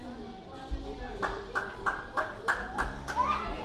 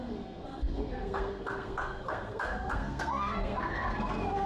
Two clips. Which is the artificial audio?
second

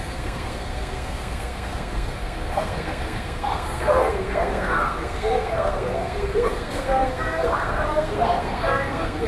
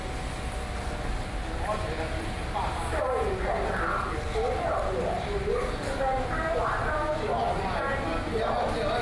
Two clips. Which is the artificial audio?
first